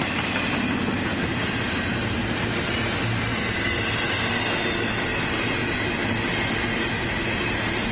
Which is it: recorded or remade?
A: recorded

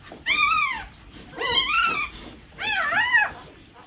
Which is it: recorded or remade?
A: recorded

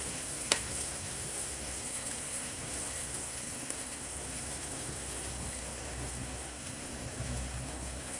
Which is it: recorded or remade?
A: remade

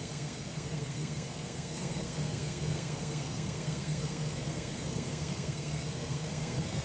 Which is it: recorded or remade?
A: remade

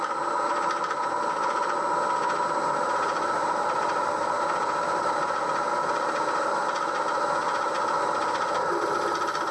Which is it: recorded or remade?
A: recorded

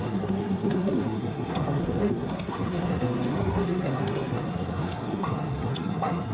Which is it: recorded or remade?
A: remade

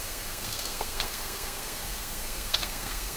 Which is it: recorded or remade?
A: remade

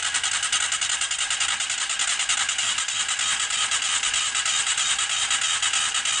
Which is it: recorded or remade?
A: recorded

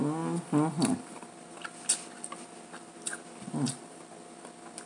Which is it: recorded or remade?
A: recorded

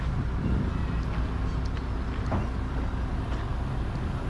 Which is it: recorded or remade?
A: recorded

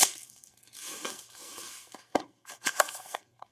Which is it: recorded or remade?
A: remade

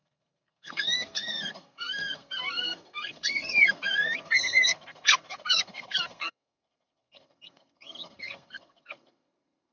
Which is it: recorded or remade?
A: remade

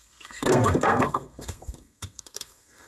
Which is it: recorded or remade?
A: remade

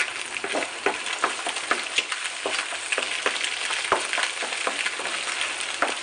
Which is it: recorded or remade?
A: recorded